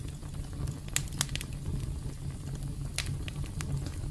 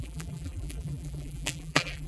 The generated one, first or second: second